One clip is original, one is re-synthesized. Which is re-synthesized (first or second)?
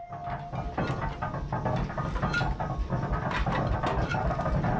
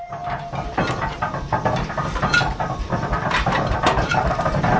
second